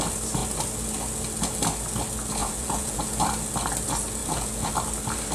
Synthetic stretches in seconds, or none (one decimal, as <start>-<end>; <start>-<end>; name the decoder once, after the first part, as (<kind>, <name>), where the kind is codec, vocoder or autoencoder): 2.4-3.2 (vocoder, Vocos); 4.2-4.7